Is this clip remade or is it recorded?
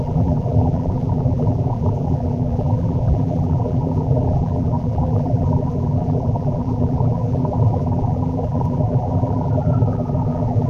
remade